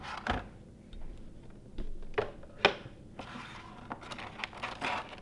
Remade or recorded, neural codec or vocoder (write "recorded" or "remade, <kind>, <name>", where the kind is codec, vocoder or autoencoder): recorded